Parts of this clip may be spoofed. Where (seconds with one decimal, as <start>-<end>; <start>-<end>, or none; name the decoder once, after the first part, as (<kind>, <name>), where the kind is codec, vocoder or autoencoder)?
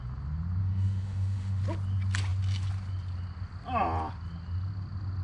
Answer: 0.6-1.6 (autoencoder, DAC-VAE)